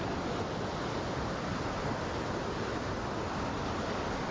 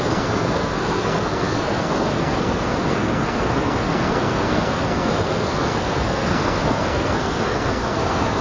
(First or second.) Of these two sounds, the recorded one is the first